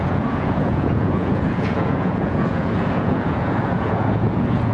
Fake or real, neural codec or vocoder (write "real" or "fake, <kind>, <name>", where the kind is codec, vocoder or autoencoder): fake, vocoder, Vocos